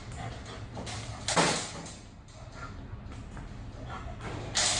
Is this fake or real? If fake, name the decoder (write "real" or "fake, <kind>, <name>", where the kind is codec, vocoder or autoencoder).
real